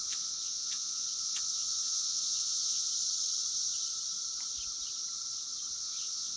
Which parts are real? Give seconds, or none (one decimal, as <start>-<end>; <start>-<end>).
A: 2.9-5.8